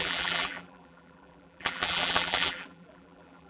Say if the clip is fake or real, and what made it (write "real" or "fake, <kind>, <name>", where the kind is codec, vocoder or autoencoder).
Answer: fake, vocoder, BigVGAN v2